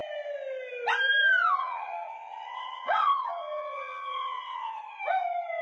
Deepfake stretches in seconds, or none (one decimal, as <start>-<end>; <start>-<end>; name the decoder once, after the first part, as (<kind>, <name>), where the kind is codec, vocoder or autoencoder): 1.6-5.0 (vocoder, WaveNeXt)